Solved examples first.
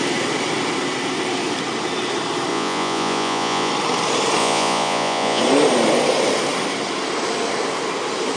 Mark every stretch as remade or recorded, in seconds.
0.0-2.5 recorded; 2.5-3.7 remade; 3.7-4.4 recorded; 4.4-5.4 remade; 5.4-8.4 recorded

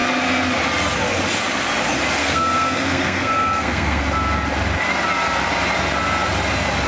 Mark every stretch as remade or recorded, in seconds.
0.0-2.2 recorded; 2.2-4.0 remade; 4.0-6.9 recorded